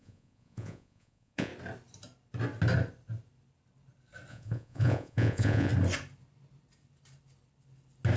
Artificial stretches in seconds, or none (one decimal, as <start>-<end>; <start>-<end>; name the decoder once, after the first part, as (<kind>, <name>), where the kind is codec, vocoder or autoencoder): 0.0-1.5 (vocoder, Vocos); 4.3-5.7